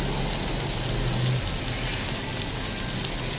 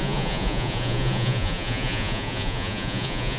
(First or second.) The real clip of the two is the first